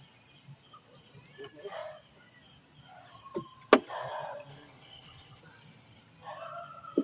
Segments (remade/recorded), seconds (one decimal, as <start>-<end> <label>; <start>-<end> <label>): 0.0-4.5 recorded; 4.5-5.4 remade; 5.4-7.0 recorded